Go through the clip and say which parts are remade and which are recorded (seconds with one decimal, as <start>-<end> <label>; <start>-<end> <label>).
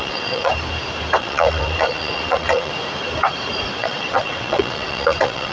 0.0-0.5 remade; 0.5-1.2 recorded; 1.2-2.7 remade; 2.7-3.8 recorded; 3.8-5.5 remade